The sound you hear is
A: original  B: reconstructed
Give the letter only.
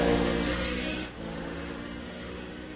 B